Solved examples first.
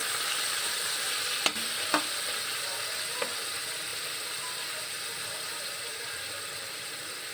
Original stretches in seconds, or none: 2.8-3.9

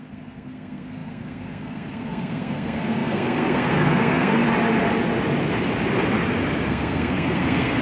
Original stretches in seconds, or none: 4.4-6.7